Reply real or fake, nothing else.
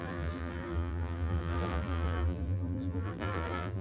fake